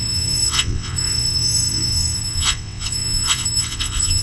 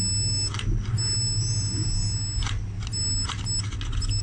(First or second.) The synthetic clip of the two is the first